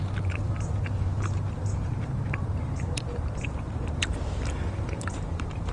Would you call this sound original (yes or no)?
no